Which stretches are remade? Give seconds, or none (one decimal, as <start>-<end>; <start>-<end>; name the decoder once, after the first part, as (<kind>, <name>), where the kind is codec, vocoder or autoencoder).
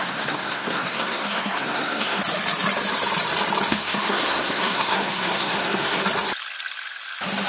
0.0-2.2 (codec, SNAC); 3.7-6.0